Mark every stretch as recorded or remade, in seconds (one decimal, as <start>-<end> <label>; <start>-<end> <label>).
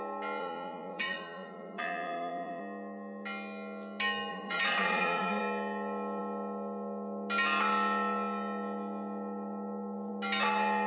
0.0-0.4 recorded; 0.4-2.6 remade; 2.6-4.3 recorded; 4.3-5.4 remade; 5.4-10.9 recorded